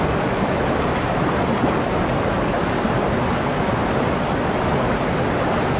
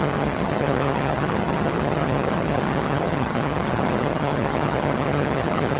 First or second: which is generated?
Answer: second